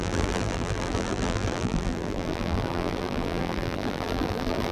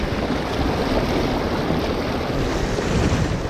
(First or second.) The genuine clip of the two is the second